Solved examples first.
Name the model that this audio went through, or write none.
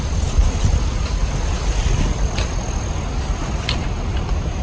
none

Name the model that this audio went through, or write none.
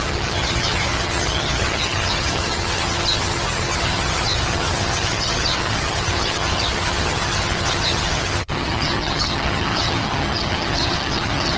vocoder, HiFi-GAN